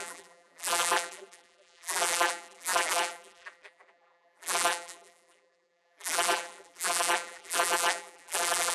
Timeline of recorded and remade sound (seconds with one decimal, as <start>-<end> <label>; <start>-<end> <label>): 0.0-8.7 remade

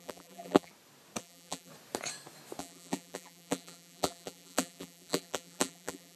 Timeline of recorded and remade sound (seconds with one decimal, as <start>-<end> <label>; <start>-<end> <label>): 0.0-0.7 remade; 0.7-1.2 recorded; 1.2-1.7 remade; 1.7-2.6 recorded; 2.6-6.2 remade

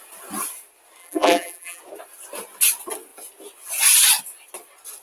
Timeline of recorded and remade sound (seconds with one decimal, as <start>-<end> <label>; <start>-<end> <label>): 0.0-1.0 recorded; 1.0-1.8 remade; 1.8-5.0 recorded

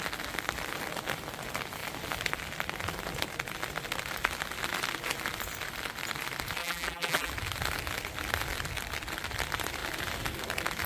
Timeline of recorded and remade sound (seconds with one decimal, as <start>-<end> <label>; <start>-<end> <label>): 0.0-6.6 recorded; 6.6-7.3 remade; 7.3-10.9 recorded

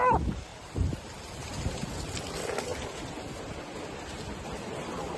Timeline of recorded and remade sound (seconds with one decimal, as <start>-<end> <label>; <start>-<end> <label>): 0.0-0.5 recorded; 0.5-1.9 remade; 1.9-5.2 recorded

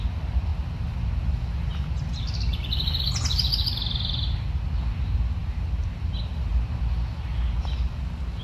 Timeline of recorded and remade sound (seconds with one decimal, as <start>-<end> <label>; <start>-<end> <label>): 0.0-8.4 recorded